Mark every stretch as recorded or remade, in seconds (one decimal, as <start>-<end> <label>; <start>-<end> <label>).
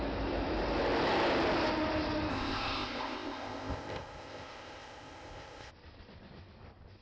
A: 0.0-2.3 recorded; 2.3-5.7 remade; 5.7-7.0 recorded